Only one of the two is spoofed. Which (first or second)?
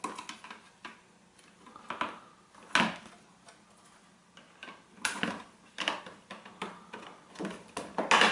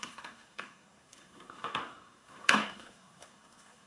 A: second